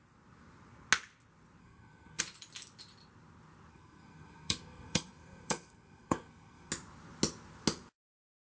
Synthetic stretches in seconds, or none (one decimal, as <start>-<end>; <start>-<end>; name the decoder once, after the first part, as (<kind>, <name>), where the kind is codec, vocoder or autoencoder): 1.6-2.2 (codec, SNAC); 3.7-6.7